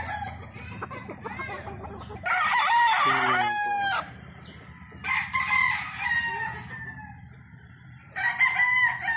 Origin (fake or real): real